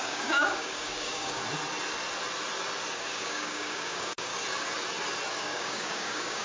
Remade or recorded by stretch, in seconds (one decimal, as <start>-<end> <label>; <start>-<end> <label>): 0.0-1.4 remade; 1.4-2.9 recorded; 2.9-4.3 remade; 4.3-5.3 recorded; 5.3-6.4 remade